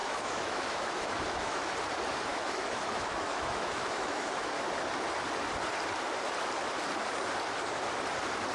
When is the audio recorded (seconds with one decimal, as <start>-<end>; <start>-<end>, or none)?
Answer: 1.7-2.3; 4.6-8.5